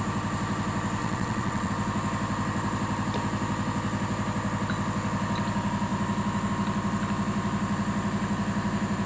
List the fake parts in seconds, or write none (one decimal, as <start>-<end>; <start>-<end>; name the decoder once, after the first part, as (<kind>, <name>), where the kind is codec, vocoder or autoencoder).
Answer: 1.0-1.7 (vocoder, WaveNeXt)